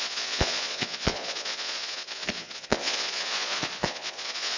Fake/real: fake